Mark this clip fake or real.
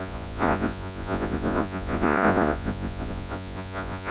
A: fake